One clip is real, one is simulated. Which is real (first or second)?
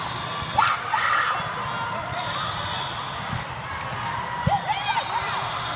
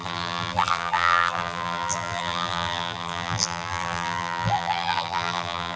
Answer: first